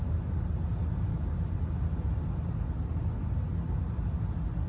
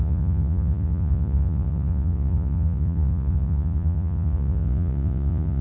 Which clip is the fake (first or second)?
second